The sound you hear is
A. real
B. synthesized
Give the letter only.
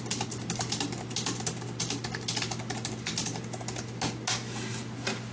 A